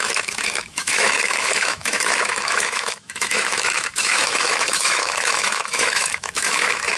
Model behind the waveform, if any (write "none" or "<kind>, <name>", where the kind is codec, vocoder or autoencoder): autoencoder, DAC-VAE